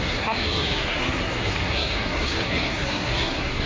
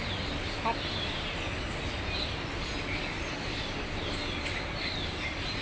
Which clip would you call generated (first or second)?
first